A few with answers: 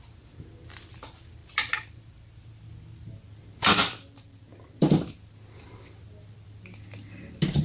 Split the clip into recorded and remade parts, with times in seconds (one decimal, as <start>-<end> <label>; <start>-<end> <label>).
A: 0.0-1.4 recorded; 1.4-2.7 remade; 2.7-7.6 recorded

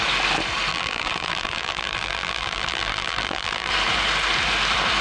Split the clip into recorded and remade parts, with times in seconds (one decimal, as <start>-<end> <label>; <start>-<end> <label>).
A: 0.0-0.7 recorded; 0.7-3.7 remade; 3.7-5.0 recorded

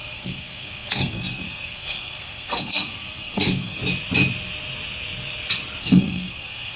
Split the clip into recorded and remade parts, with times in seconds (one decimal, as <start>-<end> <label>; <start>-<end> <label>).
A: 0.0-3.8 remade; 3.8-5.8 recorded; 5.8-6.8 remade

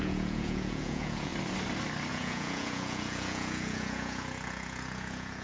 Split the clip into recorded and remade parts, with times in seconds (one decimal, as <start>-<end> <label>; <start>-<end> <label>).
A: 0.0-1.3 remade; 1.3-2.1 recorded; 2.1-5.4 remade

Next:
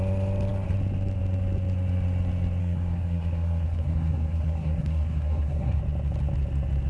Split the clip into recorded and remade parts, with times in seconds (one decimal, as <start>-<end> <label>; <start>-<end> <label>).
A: 0.0-2.6 recorded; 2.6-5.8 remade; 5.8-6.9 recorded